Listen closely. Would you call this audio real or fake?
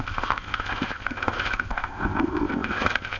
fake